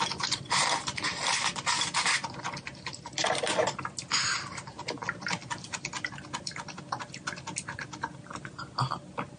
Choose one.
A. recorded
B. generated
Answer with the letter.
A